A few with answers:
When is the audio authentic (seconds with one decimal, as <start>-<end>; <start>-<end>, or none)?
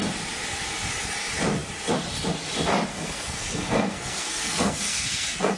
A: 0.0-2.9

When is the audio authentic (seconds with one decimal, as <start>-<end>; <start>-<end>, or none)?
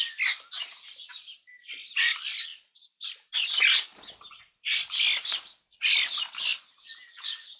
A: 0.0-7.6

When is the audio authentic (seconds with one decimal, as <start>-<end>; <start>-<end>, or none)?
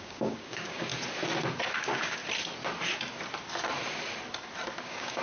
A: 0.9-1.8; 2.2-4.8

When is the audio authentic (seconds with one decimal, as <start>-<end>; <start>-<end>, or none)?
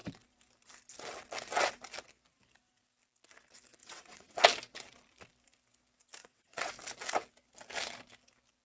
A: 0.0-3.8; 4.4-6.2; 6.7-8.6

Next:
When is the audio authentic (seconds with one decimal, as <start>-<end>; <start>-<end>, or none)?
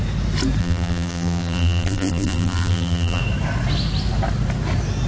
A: 0.0-0.6; 3.2-5.1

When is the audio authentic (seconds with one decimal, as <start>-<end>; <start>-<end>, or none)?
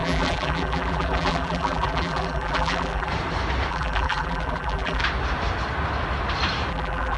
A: 3.1-3.7; 5.0-6.7